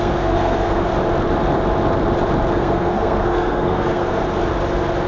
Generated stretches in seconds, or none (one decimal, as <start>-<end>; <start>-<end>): 0.0-0.9; 2.5-4.2